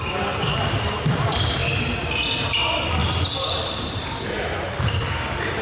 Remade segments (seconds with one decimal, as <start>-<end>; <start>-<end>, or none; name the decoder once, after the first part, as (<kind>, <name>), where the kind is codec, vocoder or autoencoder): 0.0-1.6 (vocoder, BigVGAN v2); 2.5-5.6